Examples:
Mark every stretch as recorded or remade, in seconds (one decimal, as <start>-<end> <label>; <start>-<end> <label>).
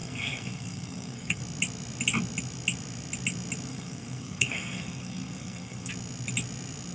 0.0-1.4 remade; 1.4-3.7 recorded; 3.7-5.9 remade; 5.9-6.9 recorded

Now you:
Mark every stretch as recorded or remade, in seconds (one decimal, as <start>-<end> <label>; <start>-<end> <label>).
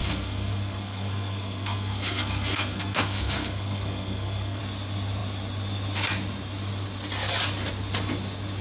0.0-4.6 remade; 4.6-8.6 recorded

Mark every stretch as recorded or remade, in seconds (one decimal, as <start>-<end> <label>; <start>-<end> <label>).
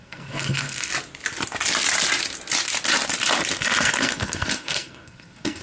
0.0-0.9 remade; 0.9-3.6 recorded; 3.6-5.6 remade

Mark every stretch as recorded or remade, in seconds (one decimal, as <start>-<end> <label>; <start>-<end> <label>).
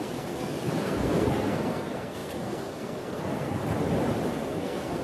0.0-3.6 remade; 3.6-4.3 recorded; 4.3-5.0 remade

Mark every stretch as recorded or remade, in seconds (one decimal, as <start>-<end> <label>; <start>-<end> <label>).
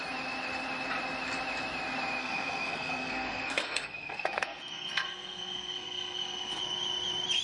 0.0-2.2 recorded; 2.2-6.6 remade; 6.6-7.4 recorded